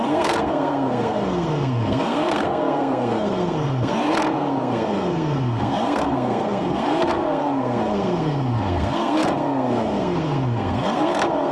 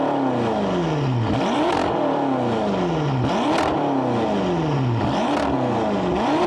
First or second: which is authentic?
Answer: second